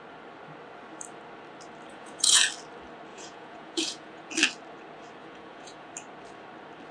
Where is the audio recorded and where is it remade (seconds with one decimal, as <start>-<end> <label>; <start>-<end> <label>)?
0.0-1.9 recorded; 1.9-2.4 remade; 2.4-3.1 recorded; 3.1-4.3 remade; 4.3-5.2 recorded; 5.2-5.9 remade; 5.9-6.9 recorded